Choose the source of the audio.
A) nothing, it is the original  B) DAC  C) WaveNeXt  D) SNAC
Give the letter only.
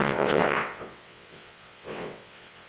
C